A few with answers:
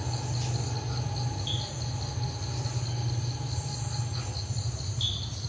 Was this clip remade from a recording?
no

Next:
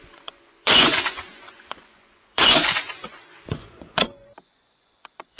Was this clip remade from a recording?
yes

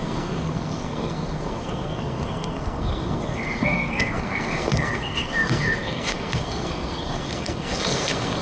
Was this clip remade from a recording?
yes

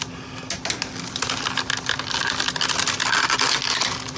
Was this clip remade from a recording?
no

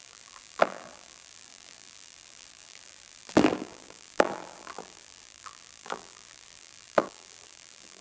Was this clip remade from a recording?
yes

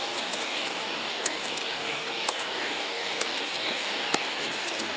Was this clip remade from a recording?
yes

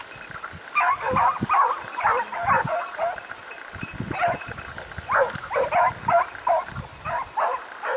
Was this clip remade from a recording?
no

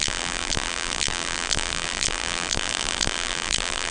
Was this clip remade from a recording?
yes